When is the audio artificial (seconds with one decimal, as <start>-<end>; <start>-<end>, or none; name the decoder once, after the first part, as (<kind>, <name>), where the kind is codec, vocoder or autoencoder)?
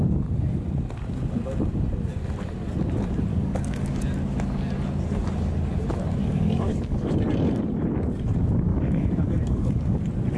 3.3-4.0 (codec, DAC); 6.2-7.1; 8.7-10.0